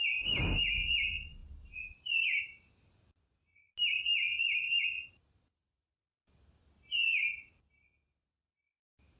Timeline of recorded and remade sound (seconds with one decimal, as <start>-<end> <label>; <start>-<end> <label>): 0.0-9.2 recorded

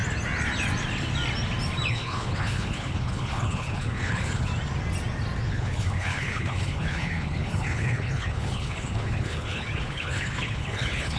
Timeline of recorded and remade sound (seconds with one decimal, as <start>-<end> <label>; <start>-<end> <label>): 0.0-1.9 recorded; 1.9-4.5 remade; 4.5-5.5 recorded; 5.5-11.2 remade